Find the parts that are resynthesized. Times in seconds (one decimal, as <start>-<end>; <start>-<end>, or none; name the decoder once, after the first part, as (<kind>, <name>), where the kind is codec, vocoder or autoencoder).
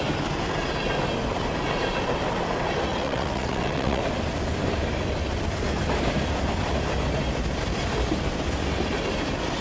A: 2.9-4.0 (vocoder, WaveNeXt)